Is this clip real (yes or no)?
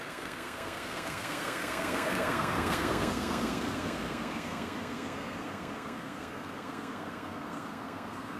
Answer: no